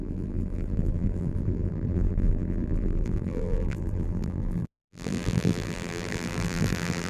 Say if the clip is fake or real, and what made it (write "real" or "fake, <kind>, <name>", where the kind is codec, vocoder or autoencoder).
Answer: fake, vocoder, BigVGAN v2